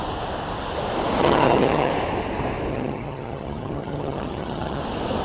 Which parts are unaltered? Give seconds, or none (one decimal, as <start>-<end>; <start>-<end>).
0.0-1.2; 1.9-2.7; 4.8-5.2